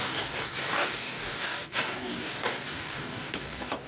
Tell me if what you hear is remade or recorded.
remade